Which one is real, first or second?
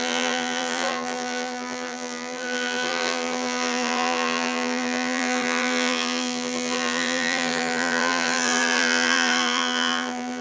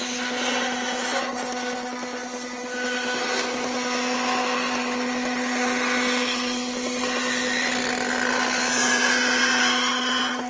second